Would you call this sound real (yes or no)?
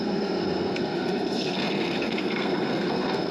no